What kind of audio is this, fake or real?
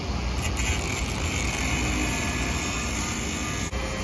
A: real